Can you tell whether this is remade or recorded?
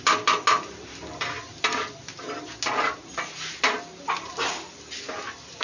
recorded